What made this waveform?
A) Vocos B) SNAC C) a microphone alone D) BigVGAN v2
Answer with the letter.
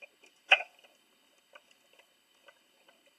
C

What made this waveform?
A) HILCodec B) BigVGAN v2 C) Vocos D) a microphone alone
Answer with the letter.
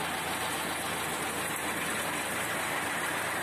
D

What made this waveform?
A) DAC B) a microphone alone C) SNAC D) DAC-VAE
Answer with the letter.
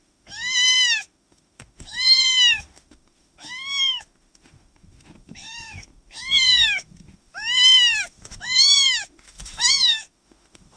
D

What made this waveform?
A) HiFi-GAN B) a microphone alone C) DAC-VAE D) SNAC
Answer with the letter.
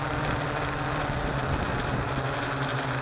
B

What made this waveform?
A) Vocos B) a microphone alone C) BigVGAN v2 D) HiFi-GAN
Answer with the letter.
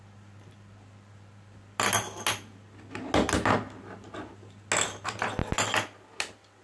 B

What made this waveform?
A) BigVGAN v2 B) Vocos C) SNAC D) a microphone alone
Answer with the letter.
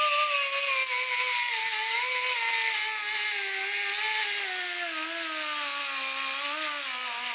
D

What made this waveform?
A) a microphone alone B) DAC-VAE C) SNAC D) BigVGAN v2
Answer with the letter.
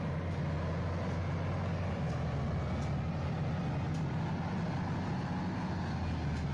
A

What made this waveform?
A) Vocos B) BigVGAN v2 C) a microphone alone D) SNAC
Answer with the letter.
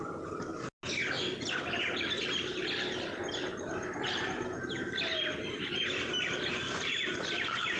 C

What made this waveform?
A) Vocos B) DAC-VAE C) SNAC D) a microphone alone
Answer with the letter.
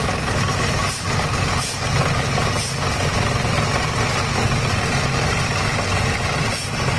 D